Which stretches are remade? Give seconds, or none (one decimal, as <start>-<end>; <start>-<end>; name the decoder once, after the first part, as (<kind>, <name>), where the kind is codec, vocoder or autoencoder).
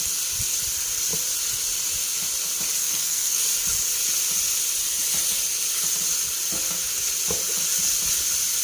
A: 2.8-3.4 (codec, SNAC)